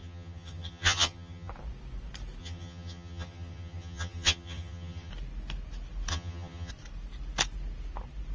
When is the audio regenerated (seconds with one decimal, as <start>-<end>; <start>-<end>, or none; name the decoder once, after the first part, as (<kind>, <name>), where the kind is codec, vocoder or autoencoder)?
0.0-1.5 (vocoder, HiFi-GAN); 2.4-5.1; 6.1-6.7